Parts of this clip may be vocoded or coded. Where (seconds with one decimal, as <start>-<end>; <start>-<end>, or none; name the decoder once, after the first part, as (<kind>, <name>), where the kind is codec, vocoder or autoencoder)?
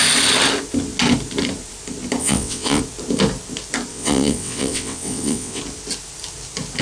2.2-2.8 (vocoder, WaveNeXt); 3.9-5.6